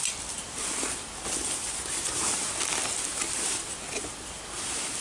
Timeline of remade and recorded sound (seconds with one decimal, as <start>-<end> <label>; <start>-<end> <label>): 0.0-5.0 recorded